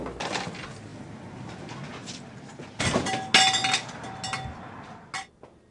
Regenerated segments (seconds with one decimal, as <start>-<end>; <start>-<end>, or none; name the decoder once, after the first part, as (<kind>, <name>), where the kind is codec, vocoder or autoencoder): none